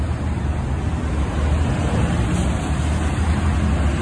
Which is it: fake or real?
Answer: real